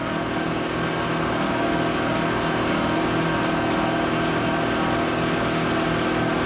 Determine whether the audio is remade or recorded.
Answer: recorded